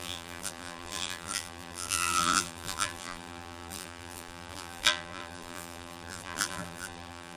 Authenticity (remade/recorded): remade